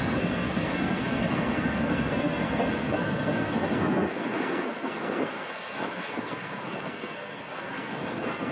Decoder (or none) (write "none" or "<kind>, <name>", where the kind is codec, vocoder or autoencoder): codec, SNAC